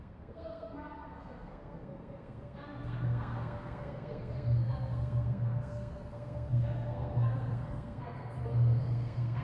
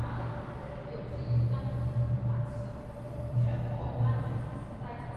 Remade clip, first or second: first